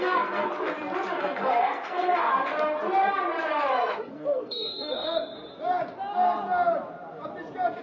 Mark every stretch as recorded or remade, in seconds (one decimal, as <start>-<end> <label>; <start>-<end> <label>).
0.0-0.5 remade; 0.5-1.2 recorded; 1.2-2.3 remade; 2.3-4.1 recorded; 4.1-5.3 remade; 5.3-7.8 recorded